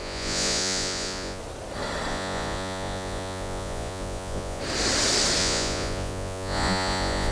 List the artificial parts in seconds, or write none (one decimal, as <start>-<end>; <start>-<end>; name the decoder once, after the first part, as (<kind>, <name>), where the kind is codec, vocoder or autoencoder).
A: 0.0-1.4 (vocoder, Vocos); 2.1-4.6; 5.4-7.3